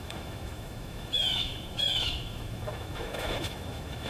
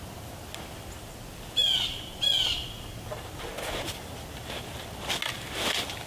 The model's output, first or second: first